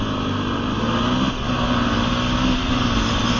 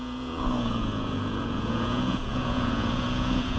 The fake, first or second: second